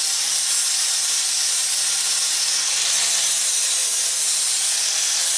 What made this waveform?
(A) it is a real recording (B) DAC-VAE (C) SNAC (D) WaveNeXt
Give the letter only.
A